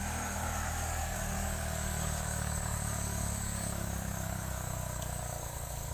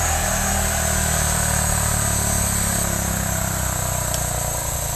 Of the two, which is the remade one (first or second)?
first